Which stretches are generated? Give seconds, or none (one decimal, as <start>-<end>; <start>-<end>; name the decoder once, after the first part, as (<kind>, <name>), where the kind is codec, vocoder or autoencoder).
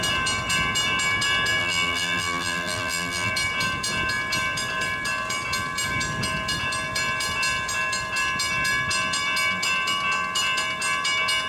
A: 1.6-3.3 (vocoder, BigVGAN v2)